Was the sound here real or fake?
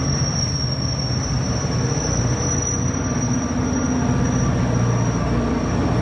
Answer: real